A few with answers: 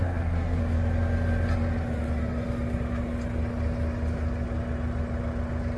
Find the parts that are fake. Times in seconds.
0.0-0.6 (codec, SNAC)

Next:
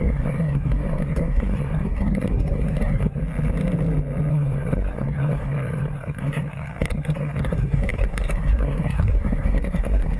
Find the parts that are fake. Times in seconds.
0.0-3.2 (codec, SNAC); 4.3-10.2

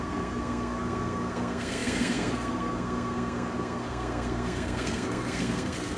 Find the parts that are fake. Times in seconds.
0.0-6.0 (codec, SNAC)

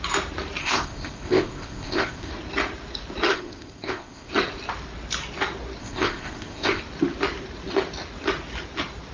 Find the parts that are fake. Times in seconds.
0.6-2.3 (codec, ZipCodec); 3.3-4.3; 5.8-6.8

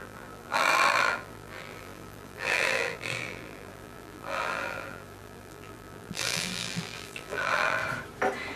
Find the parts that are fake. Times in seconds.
0.0-7.8 (vocoder, BigVGAN v2)

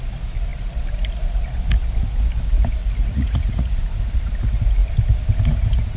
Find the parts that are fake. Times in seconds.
2.8-3.8 (vocoder, Vocos)

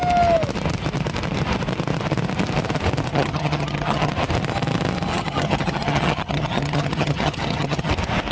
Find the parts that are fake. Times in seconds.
3.1-4.1 (vocoder, HiFi-GAN); 5.1-7.9

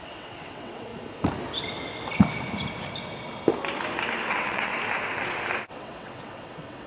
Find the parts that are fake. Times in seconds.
0.0-0.9 (vocoder, WaveNeXt); 4.3-4.7; 5.7-6.9